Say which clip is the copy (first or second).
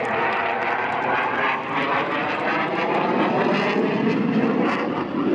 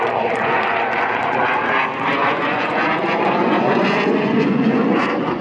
second